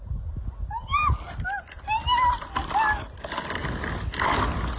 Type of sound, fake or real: real